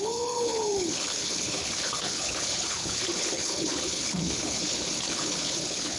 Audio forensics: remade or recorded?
remade